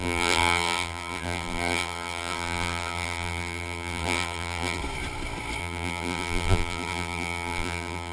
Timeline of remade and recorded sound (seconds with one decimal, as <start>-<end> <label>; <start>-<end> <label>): 0.0-4.8 remade; 4.8-5.6 recorded; 5.6-8.1 remade